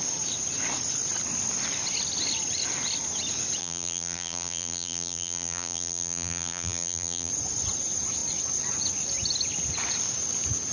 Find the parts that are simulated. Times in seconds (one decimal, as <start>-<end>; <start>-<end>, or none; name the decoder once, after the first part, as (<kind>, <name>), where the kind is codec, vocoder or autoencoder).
3.6-7.3 (vocoder, BigVGAN v2)